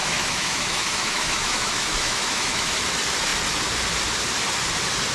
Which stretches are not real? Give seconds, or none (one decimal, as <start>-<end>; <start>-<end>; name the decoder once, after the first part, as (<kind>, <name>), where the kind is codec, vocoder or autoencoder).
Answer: 0.0-2.7 (autoencoder, DAC-VAE)